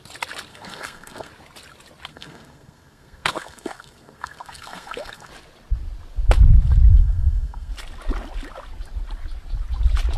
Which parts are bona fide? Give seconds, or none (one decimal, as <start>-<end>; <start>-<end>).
0.0-0.5; 1.3-2.1; 5.3-6.9; 7.7-10.2